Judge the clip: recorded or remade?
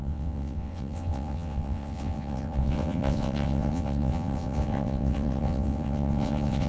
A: remade